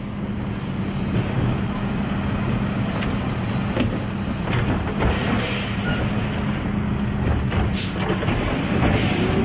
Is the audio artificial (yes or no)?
no